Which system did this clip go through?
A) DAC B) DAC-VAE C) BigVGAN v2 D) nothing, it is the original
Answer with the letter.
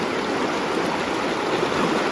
D